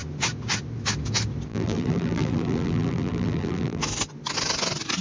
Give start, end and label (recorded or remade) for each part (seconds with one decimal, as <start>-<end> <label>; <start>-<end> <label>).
0.0-1.5 recorded; 1.5-3.8 remade; 3.8-5.0 recorded